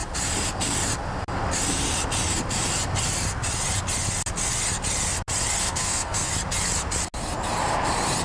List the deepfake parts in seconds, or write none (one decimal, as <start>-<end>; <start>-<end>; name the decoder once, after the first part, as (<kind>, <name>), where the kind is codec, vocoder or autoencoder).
5.6-6.3 (codec, SNAC)